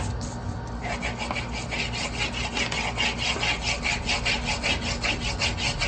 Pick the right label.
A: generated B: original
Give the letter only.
B